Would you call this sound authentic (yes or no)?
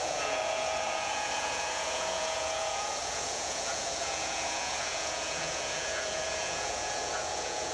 no